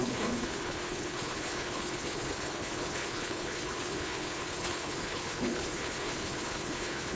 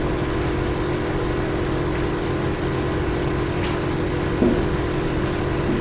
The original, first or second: second